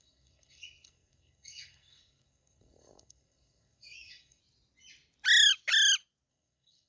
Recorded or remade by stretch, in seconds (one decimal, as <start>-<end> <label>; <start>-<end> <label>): 0.0-4.4 remade; 4.4-6.3 recorded; 6.3-6.9 remade